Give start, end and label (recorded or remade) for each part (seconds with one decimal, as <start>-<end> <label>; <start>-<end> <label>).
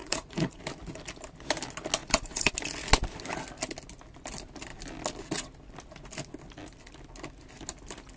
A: 0.0-0.6 remade; 0.6-2.0 recorded; 2.0-2.5 remade; 2.5-8.2 recorded